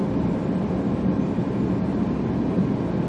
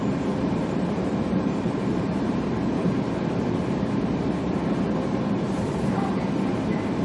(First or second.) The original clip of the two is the first